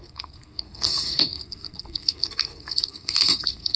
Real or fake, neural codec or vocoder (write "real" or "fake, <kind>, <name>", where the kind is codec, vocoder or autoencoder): fake, codec, SNAC